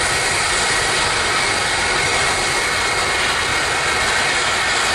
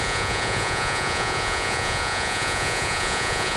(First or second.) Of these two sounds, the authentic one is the first